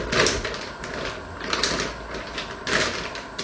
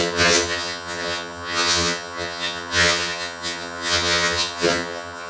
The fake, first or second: second